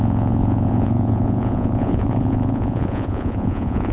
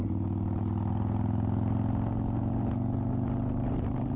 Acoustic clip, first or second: second